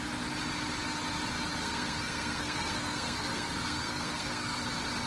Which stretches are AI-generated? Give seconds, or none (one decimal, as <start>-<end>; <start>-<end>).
1.6-4.6

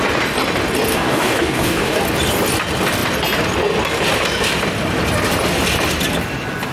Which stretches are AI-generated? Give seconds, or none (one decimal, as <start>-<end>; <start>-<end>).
0.9-2.0

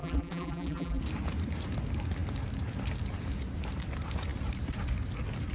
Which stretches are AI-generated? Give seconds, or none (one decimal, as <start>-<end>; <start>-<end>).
0.0-1.0

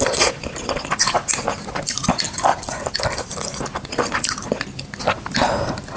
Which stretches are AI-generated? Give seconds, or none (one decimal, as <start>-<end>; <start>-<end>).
none

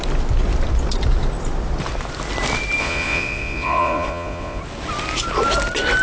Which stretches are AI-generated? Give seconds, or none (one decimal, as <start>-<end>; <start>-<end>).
2.8-4.6

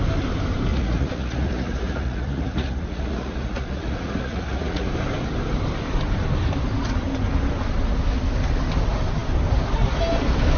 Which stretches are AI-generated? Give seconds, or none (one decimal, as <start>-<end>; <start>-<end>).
0.7-4.9

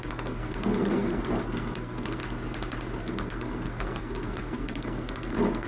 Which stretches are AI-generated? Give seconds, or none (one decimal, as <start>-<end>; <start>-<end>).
0.0-2.2; 3.0-5.7